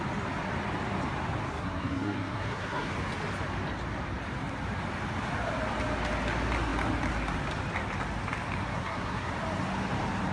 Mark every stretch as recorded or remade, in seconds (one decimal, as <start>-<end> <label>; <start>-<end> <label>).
0.0-1.5 recorded; 1.5-2.9 remade; 2.9-8.7 recorded; 8.7-9.3 remade; 9.3-10.3 recorded